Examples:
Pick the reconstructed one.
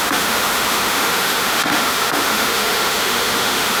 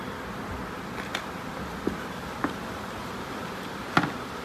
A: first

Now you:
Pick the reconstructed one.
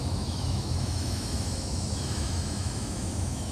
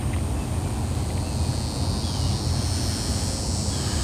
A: first